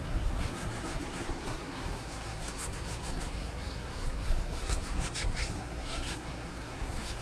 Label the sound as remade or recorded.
remade